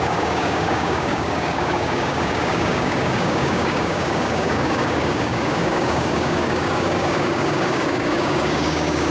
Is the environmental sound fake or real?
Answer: fake